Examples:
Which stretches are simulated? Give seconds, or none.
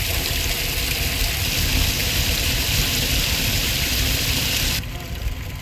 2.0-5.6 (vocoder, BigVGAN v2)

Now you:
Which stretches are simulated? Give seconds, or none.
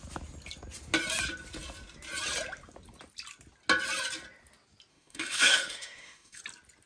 4.9-6.4 (autoencoder, DAC-VAE)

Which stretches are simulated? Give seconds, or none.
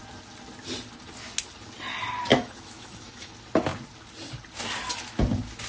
2.3-3.3 (autoencoder, DAC-VAE)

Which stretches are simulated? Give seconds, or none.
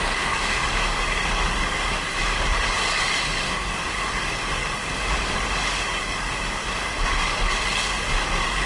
0.0-8.7 (codec, DAC)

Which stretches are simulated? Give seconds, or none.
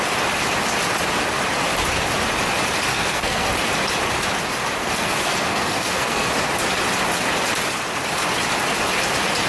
2.9-3.5 (codec, SNAC); 4.8-6.3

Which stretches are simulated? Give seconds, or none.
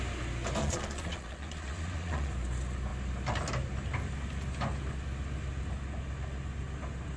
0.6-2.3 (vocoder, Vocos)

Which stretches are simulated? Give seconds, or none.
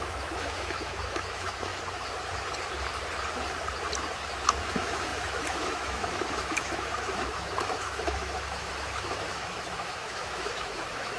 0.0-1.7 (autoencoder, DAC-VAE); 4.6-11.2